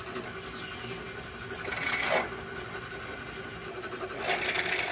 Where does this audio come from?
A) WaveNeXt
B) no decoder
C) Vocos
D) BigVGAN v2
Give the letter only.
B